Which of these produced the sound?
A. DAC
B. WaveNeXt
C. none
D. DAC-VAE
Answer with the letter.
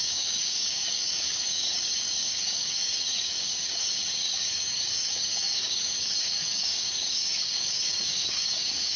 A